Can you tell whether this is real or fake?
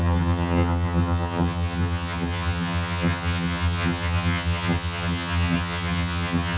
fake